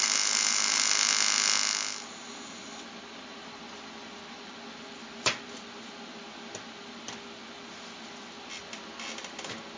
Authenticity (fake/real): real